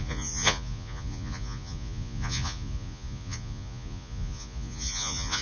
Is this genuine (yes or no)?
no